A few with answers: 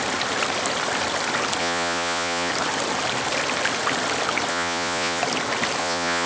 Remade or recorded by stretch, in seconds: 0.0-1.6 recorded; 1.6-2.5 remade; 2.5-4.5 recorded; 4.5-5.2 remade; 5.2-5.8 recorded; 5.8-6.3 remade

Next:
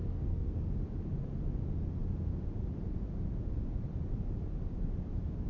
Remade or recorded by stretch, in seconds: 0.0-0.6 remade; 0.6-5.5 recorded

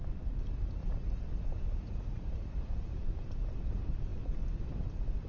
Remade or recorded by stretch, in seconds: 0.0-0.8 recorded; 0.8-3.0 remade; 3.0-5.3 recorded

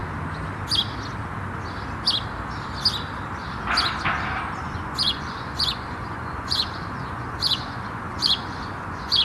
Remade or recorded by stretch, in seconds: 0.0-4.6 recorded; 4.6-9.2 remade

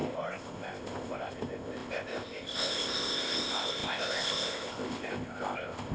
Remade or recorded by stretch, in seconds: 0.0-5.9 remade

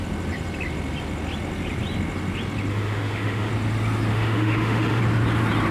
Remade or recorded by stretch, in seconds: 0.0-2.7 recorded; 2.7-3.5 remade; 3.5-4.1 recorded; 4.1-5.0 remade; 5.0-5.7 recorded

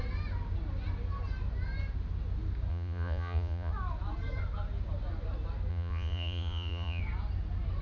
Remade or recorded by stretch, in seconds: 0.0-2.7 recorded; 2.7-3.7 remade; 3.7-5.7 recorded; 5.7-7.0 remade; 7.0-7.8 recorded

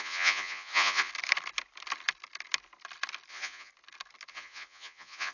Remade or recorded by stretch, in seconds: 0.0-1.1 remade; 1.1-3.3 recorded; 3.3-3.7 remade; 3.7-4.3 recorded; 4.3-5.3 remade